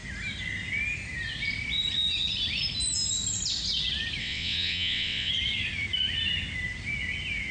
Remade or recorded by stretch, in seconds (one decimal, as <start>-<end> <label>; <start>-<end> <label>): 0.0-4.2 recorded; 4.2-5.3 remade; 5.3-7.5 recorded